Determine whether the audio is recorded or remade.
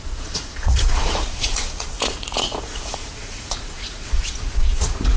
remade